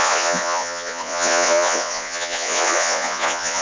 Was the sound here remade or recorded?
remade